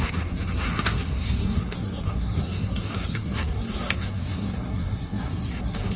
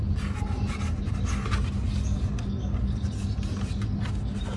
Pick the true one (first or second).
second